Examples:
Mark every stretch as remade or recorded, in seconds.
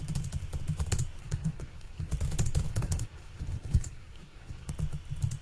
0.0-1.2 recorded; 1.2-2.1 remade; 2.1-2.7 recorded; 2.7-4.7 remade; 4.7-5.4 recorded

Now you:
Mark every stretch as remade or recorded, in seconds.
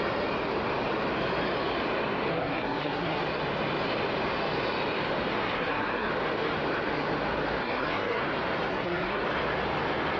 0.0-2.3 recorded; 2.3-3.2 remade; 3.2-5.3 recorded; 5.3-6.1 remade; 6.1-7.6 recorded; 7.6-8.2 remade; 8.2-8.7 recorded; 8.7-9.2 remade; 9.2-10.2 recorded